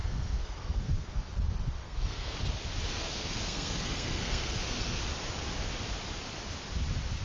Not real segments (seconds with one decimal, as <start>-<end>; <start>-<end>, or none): 0.0-1.2; 1.8-2.4; 2.9-5.0